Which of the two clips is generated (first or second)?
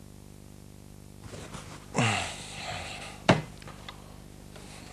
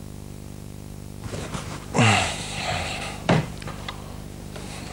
second